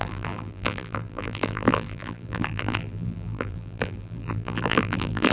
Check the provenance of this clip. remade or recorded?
remade